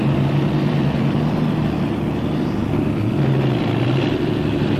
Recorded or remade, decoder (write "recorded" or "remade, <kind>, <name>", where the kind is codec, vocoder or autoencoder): recorded